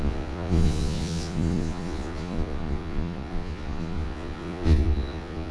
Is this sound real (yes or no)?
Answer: no